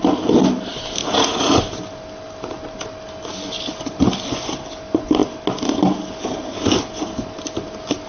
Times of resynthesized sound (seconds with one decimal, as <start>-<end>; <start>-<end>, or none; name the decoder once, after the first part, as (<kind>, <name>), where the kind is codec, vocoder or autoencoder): 1.0-1.6 (vocoder, Vocos)